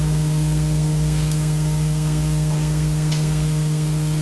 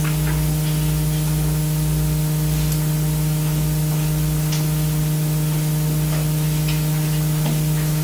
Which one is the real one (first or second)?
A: second